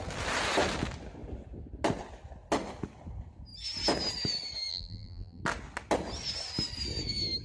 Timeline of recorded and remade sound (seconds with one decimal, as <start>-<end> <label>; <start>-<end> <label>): 0.0-4.7 recorded; 4.7-5.4 remade; 5.4-7.4 recorded